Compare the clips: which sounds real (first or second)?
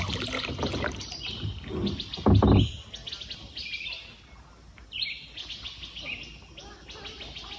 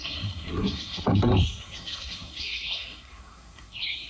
first